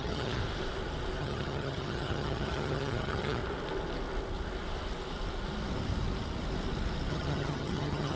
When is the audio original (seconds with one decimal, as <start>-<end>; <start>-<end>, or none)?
0.4-1.2; 3.4-7.1